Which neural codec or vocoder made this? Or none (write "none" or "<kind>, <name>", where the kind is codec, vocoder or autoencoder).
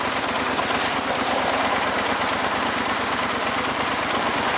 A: none